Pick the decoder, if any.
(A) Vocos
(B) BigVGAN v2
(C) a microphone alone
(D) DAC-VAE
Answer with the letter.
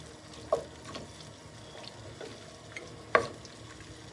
C